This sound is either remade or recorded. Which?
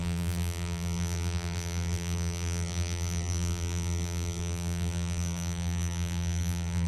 remade